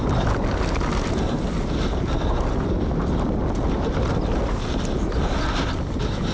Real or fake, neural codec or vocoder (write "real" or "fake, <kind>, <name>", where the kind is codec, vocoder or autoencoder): real